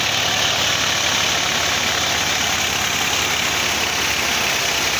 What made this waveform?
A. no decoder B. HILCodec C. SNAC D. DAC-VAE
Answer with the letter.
A